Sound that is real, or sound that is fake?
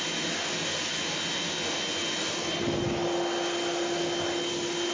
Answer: real